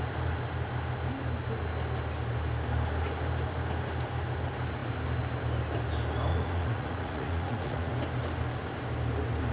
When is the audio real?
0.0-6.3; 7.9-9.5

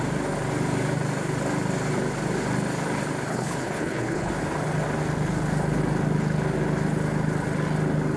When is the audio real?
0.0-3.3; 4.3-8.2

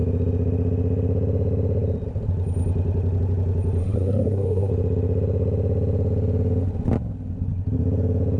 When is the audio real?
0.0-3.8; 4.7-8.4

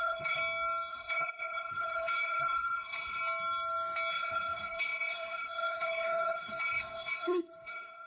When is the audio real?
0.4-0.9; 3.2-4.1